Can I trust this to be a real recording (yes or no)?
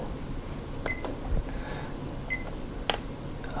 yes